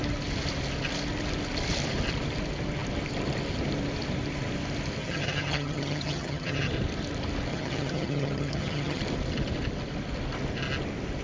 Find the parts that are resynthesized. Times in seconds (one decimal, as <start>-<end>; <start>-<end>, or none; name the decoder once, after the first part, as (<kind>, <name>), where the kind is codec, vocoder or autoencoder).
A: 5.0-6.7 (vocoder, HiFi-GAN); 7.5-9.0